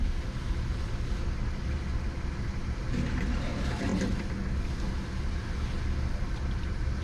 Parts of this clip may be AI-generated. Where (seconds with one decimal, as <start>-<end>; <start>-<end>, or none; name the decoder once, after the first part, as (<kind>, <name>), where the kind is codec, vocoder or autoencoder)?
none